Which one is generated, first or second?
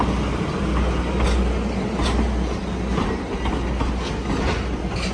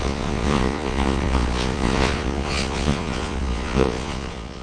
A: second